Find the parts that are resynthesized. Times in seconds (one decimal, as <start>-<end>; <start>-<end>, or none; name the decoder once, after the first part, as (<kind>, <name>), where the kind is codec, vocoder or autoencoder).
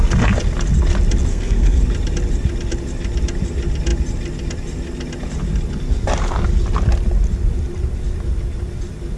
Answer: 1.3-1.8 (codec, SNAC)